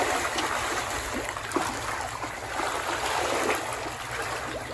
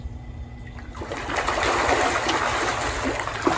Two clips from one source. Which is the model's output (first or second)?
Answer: first